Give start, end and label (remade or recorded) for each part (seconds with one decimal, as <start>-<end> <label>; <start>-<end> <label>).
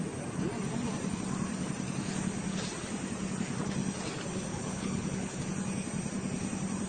0.0-4.5 recorded; 4.5-5.4 remade; 5.4-6.9 recorded